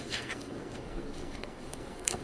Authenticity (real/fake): fake